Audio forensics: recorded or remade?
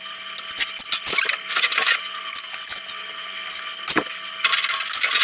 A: recorded